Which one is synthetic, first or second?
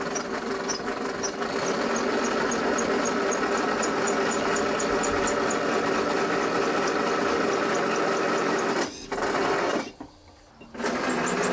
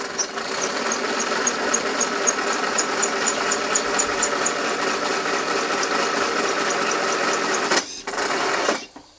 second